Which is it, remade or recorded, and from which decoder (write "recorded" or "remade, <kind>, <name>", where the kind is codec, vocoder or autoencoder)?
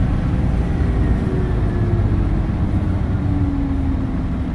recorded